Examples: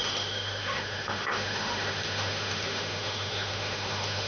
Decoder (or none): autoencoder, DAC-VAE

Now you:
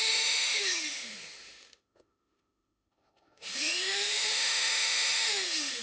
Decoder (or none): autoencoder, DAC-VAE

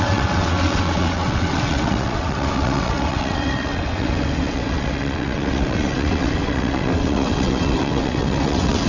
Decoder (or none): vocoder, WaveNeXt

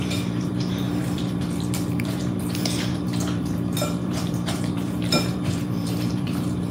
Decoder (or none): vocoder, BigVGAN v2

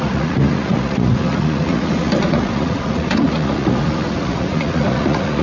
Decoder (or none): vocoder, Vocos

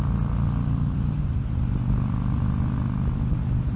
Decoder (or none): none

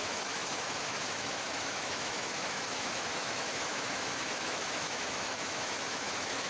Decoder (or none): autoencoder, DAC-VAE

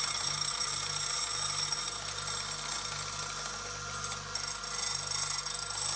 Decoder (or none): none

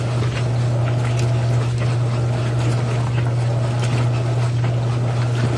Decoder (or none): none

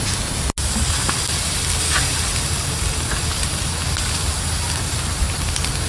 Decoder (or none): none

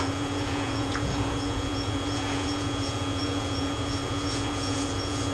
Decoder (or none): vocoder, Vocos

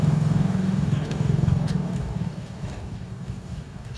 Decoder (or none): codec, DAC